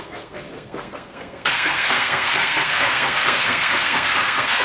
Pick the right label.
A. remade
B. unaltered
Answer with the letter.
A